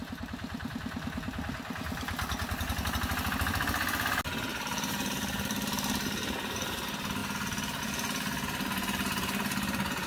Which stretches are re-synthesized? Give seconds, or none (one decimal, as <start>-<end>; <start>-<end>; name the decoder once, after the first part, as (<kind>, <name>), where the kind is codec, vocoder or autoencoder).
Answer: 4.5-6.8 (vocoder, BigVGAN v2)